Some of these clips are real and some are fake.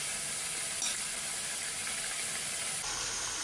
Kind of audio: real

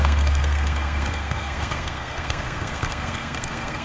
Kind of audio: fake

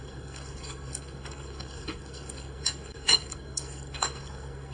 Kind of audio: fake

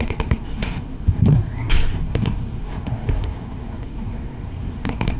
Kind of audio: fake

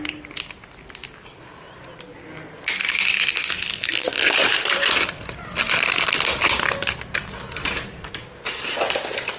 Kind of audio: real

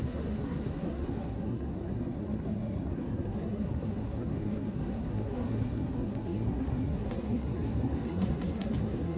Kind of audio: fake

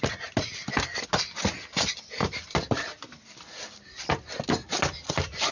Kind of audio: real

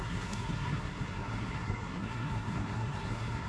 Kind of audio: fake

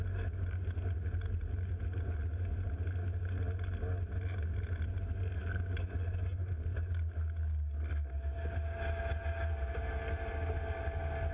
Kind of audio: real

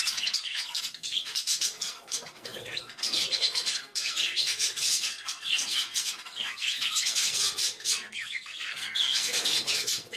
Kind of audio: fake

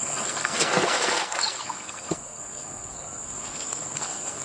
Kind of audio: fake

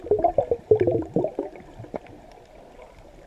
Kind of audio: real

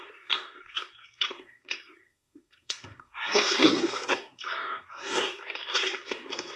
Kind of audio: fake